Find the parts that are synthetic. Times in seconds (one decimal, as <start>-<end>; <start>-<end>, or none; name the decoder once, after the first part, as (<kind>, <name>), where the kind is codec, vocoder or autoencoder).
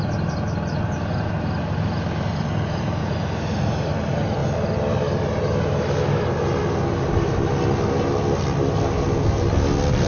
3.0-3.9 (vocoder, Vocos)